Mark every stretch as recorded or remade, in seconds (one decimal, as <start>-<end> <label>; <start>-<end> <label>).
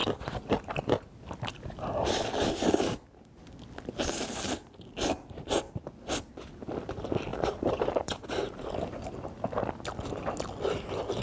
0.0-7.3 recorded; 7.3-8.2 remade; 8.2-11.2 recorded